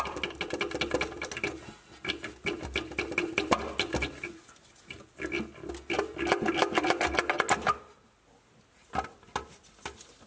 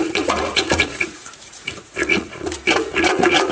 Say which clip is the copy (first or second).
second